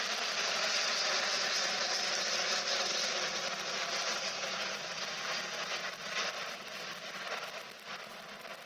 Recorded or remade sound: remade